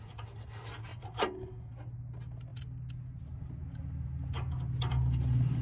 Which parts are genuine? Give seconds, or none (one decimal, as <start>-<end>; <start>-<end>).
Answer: 0.0-0.9; 1.5-5.6